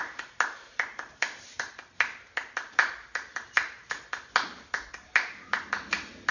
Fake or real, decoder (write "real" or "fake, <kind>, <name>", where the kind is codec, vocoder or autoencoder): real